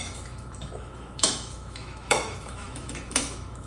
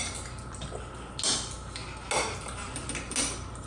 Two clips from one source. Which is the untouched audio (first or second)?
second